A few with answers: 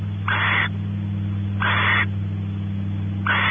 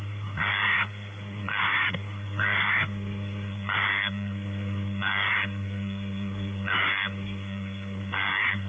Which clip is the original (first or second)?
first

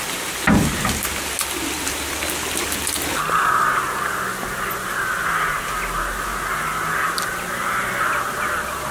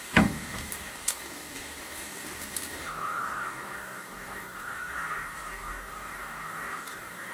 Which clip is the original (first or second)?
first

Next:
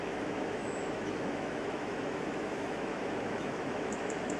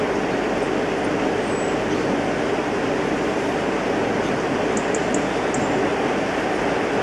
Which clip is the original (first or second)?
second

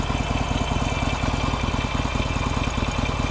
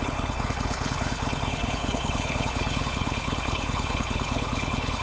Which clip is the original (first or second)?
first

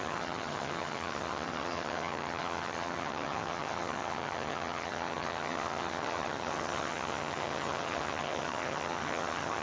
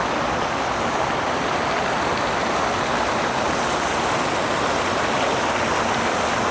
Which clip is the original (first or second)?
second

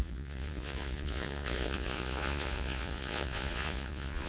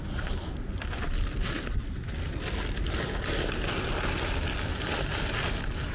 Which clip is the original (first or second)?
second